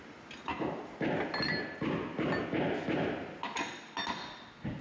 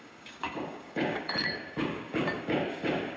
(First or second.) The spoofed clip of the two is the second